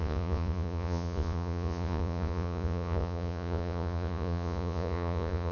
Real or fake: fake